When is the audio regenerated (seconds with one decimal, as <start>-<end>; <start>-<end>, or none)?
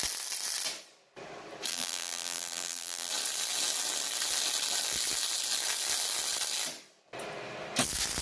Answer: 1.7-3.1